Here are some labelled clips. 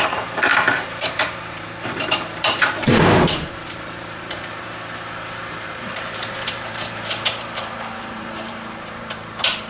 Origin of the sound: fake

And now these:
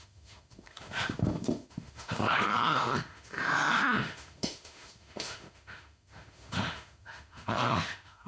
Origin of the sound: fake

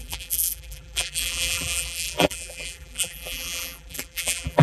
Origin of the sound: fake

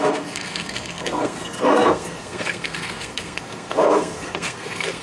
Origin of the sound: fake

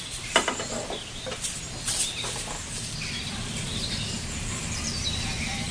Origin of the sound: fake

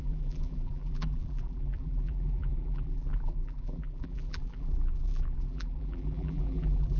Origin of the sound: fake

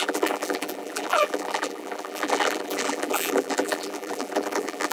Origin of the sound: fake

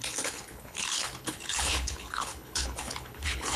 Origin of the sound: fake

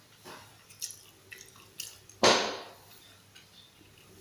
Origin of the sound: real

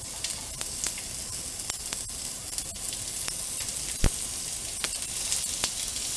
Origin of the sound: real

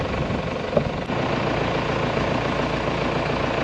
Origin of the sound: real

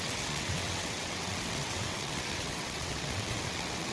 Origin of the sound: fake